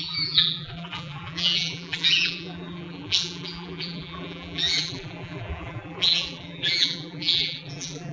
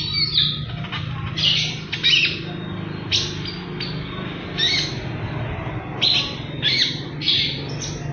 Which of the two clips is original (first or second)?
second